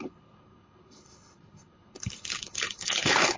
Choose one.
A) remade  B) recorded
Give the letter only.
A